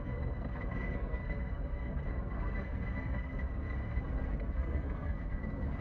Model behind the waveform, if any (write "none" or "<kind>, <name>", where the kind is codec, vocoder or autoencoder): codec, SNAC